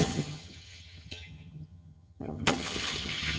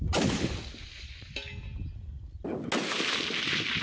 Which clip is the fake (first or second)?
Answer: first